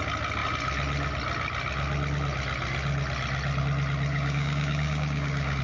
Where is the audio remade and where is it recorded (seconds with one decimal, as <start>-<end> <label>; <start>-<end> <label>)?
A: 0.0-4.1 recorded; 4.1-5.6 remade